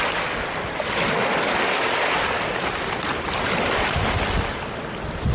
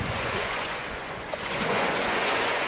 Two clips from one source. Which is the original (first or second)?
first